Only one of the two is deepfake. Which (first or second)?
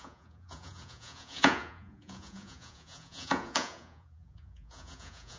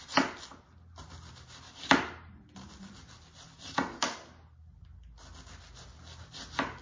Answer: first